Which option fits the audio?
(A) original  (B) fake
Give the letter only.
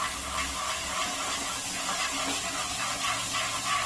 A